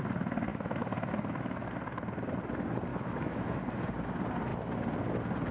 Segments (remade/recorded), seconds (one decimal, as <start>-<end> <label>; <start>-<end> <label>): 0.0-0.5 recorded; 0.5-1.7 remade; 1.7-2.9 recorded; 2.9-3.6 remade; 3.6-5.5 recorded